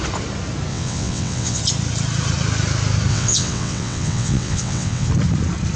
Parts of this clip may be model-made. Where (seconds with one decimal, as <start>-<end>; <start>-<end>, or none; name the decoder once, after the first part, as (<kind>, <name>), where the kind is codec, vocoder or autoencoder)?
0.7-1.6 (vocoder, WaveNeXt); 3.1-5.1